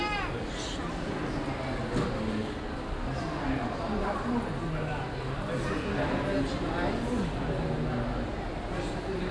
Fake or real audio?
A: real